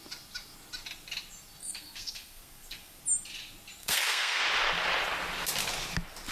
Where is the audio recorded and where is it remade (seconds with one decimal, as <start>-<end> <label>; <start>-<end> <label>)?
0.0-1.6 recorded; 1.6-3.0 remade; 3.0-3.8 recorded; 3.8-4.4 remade; 4.4-6.3 recorded